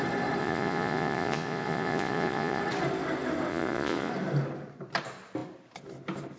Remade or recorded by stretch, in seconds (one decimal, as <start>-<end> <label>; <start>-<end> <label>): 0.0-0.4 recorded; 0.4-2.6 remade; 2.6-3.5 recorded; 3.5-4.1 remade; 4.1-6.4 recorded